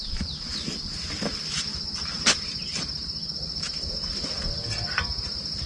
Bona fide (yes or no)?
yes